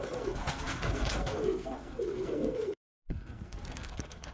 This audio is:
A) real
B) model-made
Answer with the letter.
B